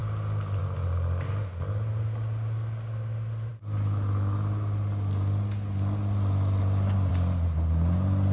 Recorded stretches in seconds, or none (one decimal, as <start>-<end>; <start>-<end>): 0.0-8.3